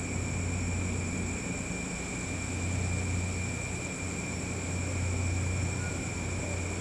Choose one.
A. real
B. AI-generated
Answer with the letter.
A